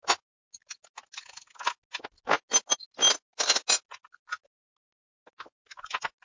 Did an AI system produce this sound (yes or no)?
no